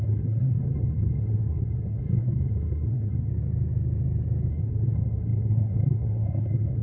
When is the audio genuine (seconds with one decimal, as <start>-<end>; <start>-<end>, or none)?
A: 3.3-4.5

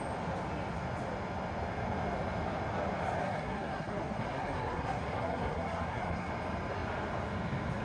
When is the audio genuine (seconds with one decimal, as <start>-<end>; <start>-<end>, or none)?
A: 0.0-3.2; 6.3-7.8